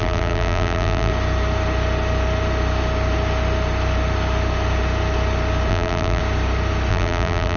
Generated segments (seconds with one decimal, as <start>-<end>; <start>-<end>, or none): 0.0-1.1; 5.7-6.2; 6.9-7.6